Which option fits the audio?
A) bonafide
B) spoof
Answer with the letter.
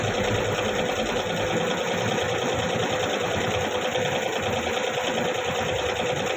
A